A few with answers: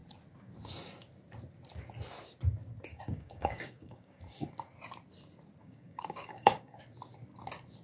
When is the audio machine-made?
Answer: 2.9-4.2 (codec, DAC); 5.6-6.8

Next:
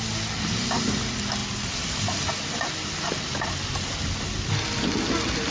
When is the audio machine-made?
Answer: none

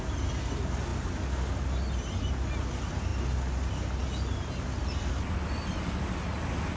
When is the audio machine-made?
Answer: none